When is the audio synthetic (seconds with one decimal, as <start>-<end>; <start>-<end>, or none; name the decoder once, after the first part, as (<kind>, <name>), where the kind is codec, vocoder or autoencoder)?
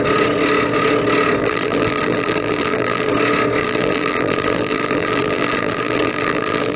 1.4-3.1 (vocoder, BigVGAN v2); 3.6-6.8